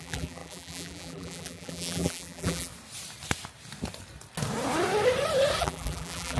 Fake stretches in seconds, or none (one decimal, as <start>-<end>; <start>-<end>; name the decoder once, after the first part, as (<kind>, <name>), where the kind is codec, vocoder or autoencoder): 0.0-2.7 (vocoder, BigVGAN v2); 5.6-6.4